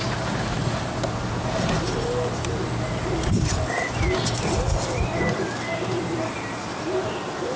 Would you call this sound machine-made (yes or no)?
no